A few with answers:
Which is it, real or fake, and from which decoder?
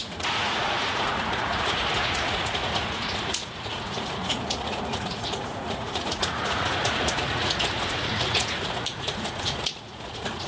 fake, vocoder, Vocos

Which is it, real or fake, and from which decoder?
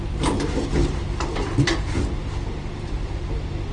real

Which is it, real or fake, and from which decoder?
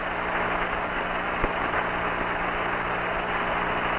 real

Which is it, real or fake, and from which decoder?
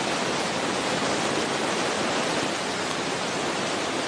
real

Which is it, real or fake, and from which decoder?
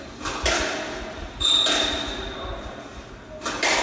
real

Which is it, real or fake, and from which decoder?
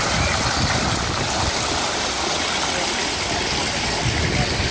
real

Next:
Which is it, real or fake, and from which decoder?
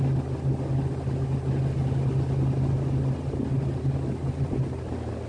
real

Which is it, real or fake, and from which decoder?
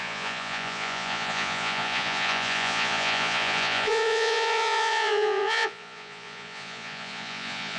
fake, vocoder, Vocos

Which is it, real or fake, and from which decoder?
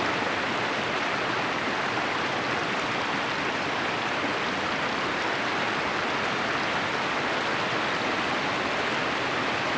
real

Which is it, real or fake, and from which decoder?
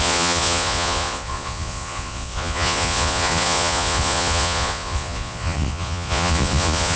fake, vocoder, Vocos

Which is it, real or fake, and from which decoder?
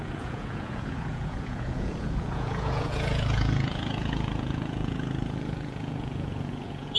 fake, vocoder, Vocos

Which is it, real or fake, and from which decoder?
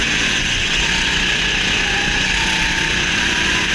fake, vocoder, Vocos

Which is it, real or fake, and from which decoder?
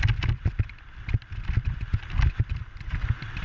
real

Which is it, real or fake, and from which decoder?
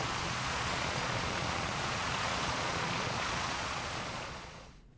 fake, vocoder, Vocos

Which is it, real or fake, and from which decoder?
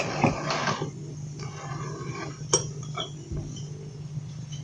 real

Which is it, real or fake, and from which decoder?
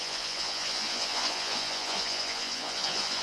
fake, vocoder, Vocos